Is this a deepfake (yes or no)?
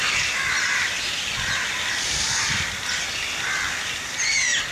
no